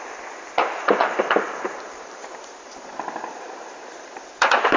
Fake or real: fake